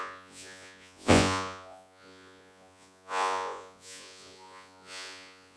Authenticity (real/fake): fake